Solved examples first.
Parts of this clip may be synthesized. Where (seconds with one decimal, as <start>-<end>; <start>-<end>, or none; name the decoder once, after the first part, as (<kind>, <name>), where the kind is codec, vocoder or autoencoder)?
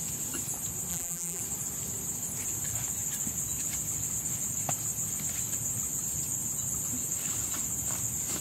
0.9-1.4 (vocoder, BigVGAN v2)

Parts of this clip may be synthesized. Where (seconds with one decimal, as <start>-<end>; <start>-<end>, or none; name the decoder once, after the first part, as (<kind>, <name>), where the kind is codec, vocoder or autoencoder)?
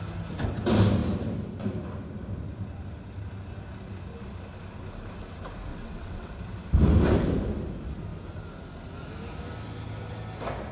5.7-6.3 (vocoder, WaveNeXt)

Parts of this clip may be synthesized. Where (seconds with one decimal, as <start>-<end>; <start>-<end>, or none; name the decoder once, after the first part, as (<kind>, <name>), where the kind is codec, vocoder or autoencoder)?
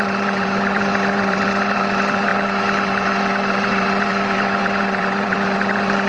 0.0-6.1 (vocoder, BigVGAN v2)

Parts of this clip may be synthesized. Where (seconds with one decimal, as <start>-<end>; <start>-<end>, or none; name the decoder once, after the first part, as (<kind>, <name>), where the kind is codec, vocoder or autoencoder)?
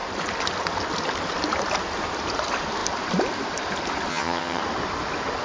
4.1-4.6 (vocoder, HiFi-GAN)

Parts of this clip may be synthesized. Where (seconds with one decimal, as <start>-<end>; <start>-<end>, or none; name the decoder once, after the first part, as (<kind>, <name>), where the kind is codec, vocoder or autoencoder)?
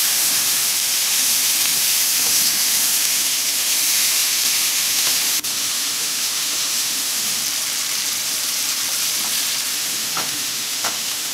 0.0-7.4 (autoencoder, DAC-VAE); 9.7-11.3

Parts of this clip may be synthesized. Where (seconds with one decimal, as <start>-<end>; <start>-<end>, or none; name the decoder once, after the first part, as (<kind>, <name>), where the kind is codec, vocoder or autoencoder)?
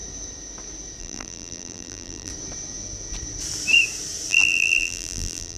1.0-2.3 (vocoder, BigVGAN v2); 4.3-5.6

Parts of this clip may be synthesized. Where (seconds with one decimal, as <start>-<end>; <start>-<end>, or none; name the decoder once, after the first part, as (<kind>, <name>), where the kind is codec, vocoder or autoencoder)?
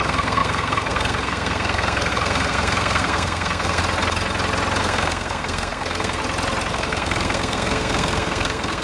0.0-3.8 (codec, SNAC); 4.8-6.2; 6.7-8.8